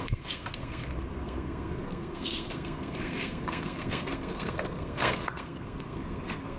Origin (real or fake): fake